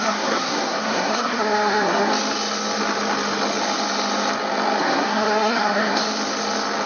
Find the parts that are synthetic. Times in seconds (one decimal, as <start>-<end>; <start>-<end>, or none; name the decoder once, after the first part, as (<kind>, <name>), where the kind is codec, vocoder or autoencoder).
0.0-2.1 (codec, SNAC); 4.8-6.0